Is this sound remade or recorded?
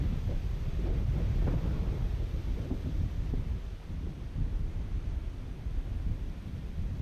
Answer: recorded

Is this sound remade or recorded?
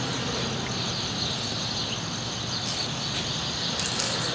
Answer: recorded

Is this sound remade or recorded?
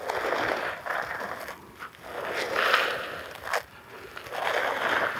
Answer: recorded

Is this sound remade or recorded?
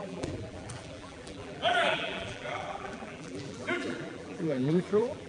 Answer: remade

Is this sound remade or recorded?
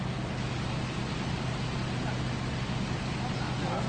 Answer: recorded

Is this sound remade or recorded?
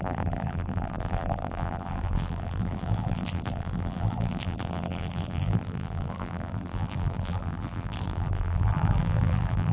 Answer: remade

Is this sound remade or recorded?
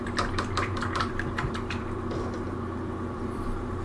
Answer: remade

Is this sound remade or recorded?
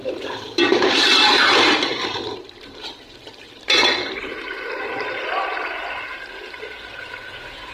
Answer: remade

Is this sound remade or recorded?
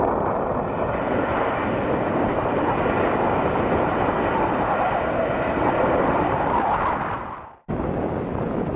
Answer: remade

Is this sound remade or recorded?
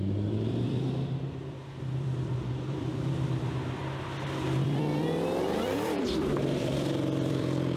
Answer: remade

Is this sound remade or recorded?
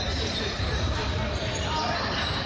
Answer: remade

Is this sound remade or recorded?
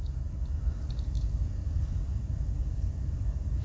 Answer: remade